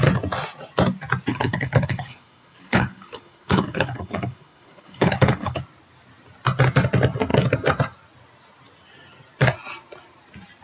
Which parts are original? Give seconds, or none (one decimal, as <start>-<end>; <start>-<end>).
0.0-1.3; 5.6-10.6